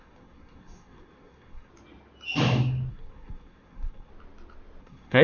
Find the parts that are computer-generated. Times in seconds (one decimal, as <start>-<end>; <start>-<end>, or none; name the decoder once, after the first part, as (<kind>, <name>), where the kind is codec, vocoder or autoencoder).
0.0-1.7 (codec, SNAC); 2.9-4.1; 4.8-5.2